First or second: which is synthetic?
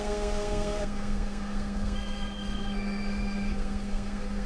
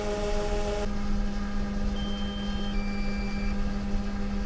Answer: first